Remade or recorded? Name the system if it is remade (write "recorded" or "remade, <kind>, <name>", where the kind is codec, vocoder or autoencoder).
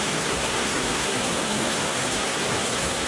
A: remade, codec, SNAC